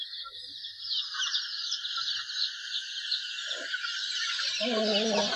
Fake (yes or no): no